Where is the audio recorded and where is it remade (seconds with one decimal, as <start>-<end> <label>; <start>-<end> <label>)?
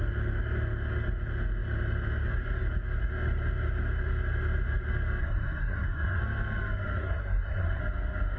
0.0-5.2 recorded; 5.2-6.2 remade; 6.2-7.0 recorded; 7.0-7.8 remade; 7.8-8.4 recorded